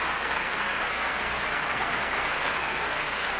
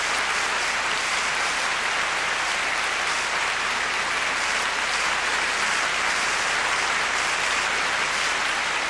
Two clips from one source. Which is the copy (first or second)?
first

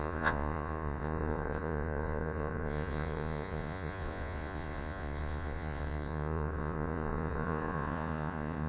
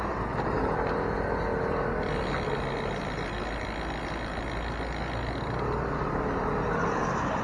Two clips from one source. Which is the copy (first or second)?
first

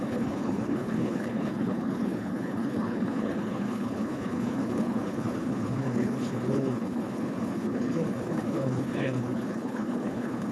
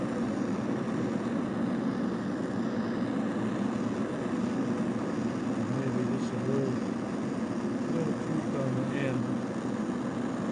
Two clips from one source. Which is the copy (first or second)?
first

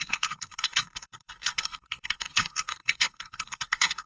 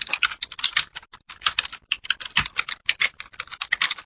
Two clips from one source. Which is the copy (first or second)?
first